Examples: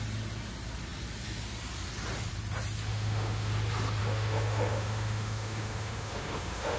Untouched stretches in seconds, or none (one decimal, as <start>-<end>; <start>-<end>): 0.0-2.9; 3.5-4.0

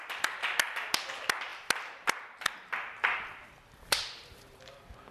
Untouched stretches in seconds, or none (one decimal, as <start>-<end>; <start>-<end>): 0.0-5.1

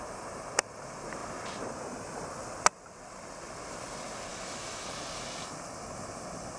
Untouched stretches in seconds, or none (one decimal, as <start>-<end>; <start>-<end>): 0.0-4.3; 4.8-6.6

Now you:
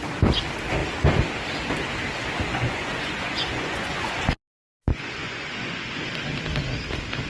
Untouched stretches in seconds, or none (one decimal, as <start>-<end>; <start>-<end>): 0.0-2.5; 4.3-4.9; 6.0-7.3

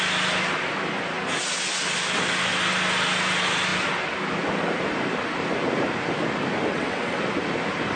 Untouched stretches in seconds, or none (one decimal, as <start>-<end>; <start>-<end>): 0.0-6.7; 7.2-8.0

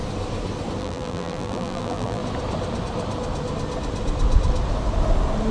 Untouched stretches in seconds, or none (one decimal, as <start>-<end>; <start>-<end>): 0.0-0.8; 2.2-5.5

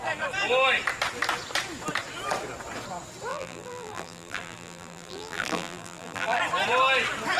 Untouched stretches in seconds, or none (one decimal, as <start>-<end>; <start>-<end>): 0.0-3.3; 6.4-7.4